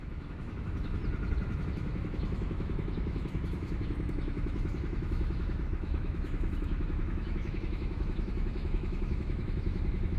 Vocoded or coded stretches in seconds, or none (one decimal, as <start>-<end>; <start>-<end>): 0.0-1.0; 1.6-10.2